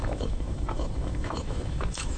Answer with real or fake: fake